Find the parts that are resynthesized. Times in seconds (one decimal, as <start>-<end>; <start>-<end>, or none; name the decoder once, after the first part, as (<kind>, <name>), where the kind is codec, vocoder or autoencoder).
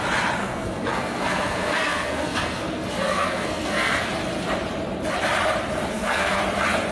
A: 0.4-4.1 (codec, SNAC); 5.9-6.4